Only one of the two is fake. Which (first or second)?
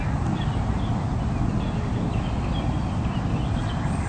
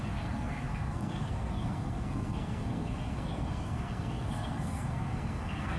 second